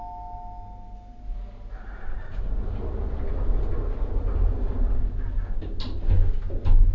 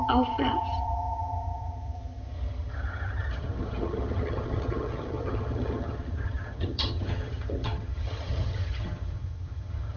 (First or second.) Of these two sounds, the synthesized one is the second